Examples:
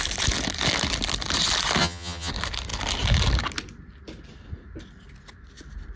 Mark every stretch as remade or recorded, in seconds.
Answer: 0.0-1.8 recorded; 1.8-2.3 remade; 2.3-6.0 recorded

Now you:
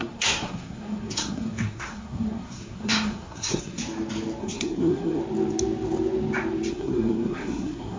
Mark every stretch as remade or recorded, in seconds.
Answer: 0.0-3.8 remade; 3.8-4.4 recorded; 4.4-5.2 remade; 5.2-6.7 recorded; 6.7-8.0 remade

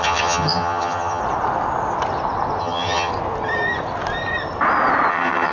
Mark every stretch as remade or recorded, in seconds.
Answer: 0.0-1.2 remade; 1.2-2.6 recorded; 2.6-3.1 remade; 3.1-5.1 recorded; 5.1-5.5 remade

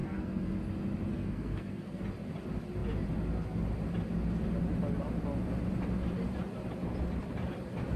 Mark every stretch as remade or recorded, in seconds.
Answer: 0.0-0.5 remade; 0.5-1.1 recorded; 1.1-2.0 remade; 2.0-8.0 recorded

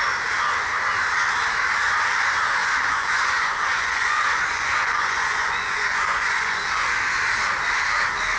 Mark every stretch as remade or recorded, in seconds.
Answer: 0.0-2.6 recorded; 2.6-6.9 remade; 6.9-8.4 recorded

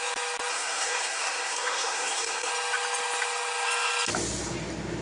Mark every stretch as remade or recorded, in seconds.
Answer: 0.0-0.5 recorded; 0.5-2.5 remade; 2.5-5.0 recorded

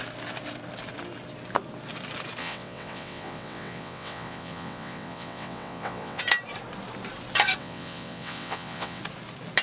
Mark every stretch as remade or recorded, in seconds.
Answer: 0.0-2.4 recorded; 2.4-6.2 remade; 6.2-7.6 recorded; 7.6-9.0 remade; 9.0-9.6 recorded

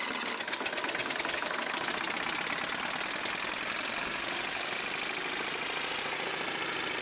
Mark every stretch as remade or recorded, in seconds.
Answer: 0.0-1.0 recorded; 1.0-1.9 remade; 1.9-4.0 recorded; 4.0-4.8 remade; 4.8-7.0 recorded